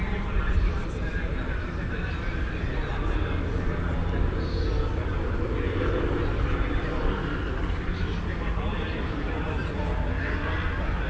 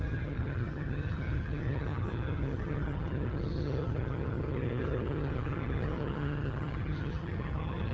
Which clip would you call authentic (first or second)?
first